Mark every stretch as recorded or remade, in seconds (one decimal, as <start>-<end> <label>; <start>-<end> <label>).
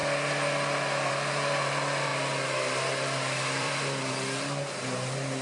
0.0-1.1 recorded; 1.1-5.4 remade